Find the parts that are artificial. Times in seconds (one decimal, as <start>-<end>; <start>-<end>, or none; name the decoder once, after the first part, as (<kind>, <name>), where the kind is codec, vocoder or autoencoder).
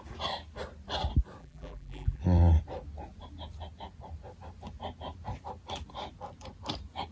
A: 1.4-2.2 (vocoder, BigVGAN v2)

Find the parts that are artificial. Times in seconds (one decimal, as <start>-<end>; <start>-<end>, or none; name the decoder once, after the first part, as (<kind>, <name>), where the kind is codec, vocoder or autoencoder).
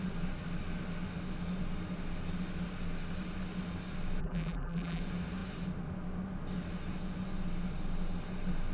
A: 4.2-5.0 (vocoder, BigVGAN v2)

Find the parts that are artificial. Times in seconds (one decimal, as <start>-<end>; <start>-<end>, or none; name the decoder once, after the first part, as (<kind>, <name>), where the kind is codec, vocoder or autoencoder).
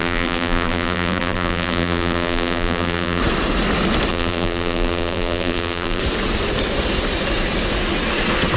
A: 0.0-3.2 (vocoder, BigVGAN v2); 4.1-6.0